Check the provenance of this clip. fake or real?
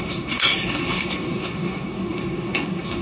fake